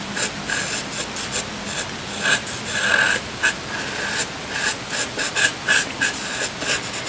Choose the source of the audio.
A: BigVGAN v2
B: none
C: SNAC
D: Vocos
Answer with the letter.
B